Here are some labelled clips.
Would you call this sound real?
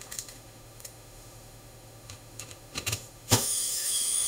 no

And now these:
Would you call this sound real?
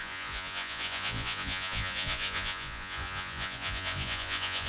no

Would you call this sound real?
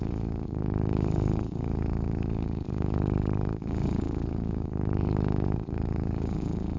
no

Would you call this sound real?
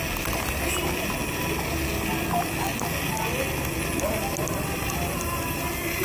yes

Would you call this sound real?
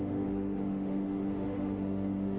no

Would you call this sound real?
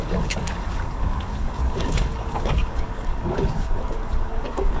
no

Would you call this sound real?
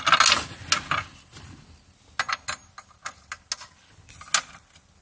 yes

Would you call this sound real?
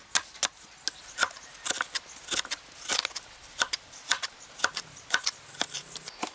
yes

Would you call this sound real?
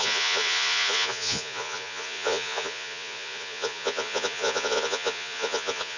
no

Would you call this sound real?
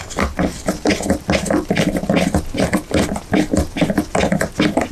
yes